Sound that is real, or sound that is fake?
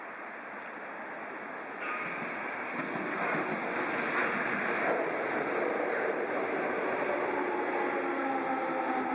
real